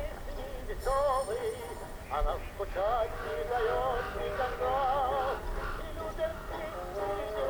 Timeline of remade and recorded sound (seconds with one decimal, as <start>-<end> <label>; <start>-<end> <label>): 0.0-7.5 recorded